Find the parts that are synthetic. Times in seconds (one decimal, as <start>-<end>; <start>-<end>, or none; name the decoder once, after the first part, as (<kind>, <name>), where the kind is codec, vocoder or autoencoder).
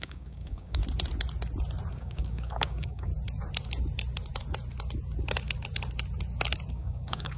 0.0-0.8 (codec, DAC); 1.9-3.1; 6.7-7.4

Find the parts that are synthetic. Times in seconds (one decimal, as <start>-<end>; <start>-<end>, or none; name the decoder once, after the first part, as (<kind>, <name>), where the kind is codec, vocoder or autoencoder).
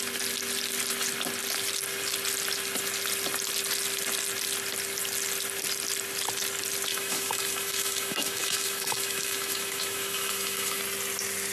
6.9-10.8 (autoencoder, DAC-VAE)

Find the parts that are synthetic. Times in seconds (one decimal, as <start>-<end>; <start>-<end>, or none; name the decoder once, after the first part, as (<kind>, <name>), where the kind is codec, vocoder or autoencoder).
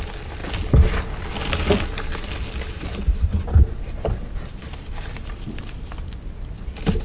none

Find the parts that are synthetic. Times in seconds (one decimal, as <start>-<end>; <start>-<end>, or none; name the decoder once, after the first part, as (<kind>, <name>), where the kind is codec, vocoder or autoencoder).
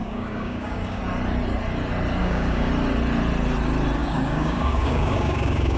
0.0-1.0 (codec, DAC); 2.2-2.7; 4.0-5.8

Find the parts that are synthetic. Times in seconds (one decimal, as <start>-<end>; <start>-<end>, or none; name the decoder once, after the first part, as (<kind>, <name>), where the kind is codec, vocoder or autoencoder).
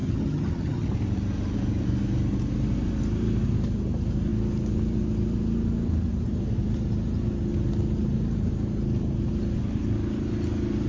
0.0-0.9 (vocoder, HiFi-GAN)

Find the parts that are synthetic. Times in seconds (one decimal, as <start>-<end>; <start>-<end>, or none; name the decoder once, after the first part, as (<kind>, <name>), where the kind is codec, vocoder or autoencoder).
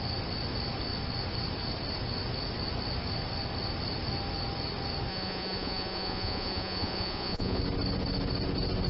5.1-7.6 (vocoder, Vocos)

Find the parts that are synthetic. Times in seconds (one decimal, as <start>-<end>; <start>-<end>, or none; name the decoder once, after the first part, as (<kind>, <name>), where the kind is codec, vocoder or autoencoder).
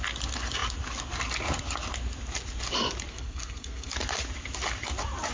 3.1-3.9 (codec, SNAC)